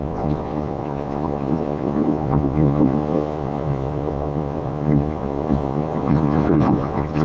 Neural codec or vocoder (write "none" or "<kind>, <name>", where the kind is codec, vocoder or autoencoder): vocoder, Vocos